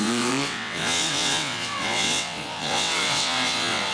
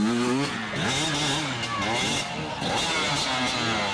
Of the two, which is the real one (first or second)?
second